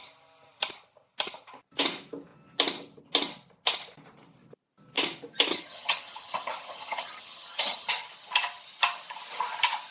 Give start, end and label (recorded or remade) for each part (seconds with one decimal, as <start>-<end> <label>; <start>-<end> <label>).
0.0-5.5 recorded; 5.5-7.9 remade; 7.9-9.9 recorded